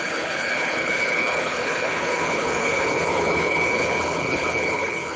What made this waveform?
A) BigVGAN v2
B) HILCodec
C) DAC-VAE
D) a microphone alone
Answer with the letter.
B